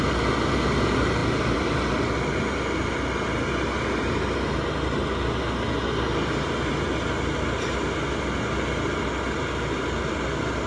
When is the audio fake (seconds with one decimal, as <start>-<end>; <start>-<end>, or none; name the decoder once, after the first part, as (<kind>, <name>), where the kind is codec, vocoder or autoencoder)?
1.2-1.9 (vocoder, BigVGAN v2)